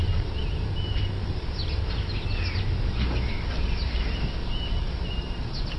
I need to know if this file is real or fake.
real